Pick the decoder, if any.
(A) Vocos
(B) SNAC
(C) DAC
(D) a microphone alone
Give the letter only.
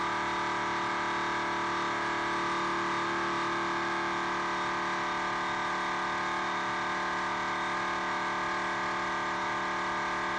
D